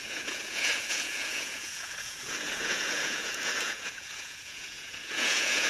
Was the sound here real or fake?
fake